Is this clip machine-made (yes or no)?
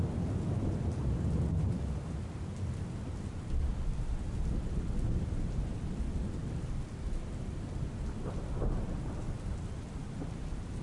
no